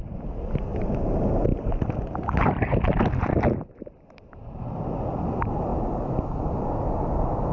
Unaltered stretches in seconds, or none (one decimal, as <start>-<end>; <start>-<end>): 0.0-7.5

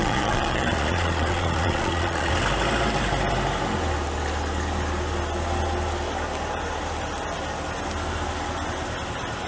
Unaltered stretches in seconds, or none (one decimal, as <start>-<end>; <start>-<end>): 2.3-9.5

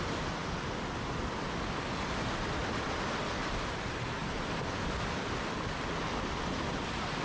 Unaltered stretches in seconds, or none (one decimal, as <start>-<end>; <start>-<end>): 0.0-7.2

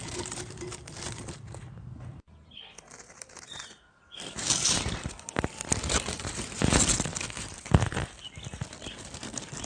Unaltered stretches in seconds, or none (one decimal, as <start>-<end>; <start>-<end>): 0.0-9.7